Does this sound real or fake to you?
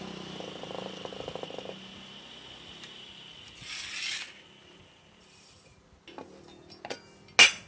real